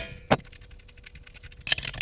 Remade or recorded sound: recorded